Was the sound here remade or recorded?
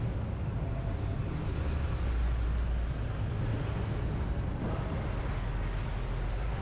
recorded